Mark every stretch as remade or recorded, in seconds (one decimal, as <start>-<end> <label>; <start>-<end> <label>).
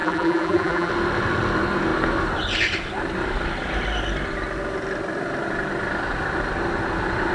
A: 0.0-0.9 remade; 0.9-7.3 recorded